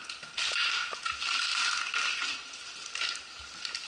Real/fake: real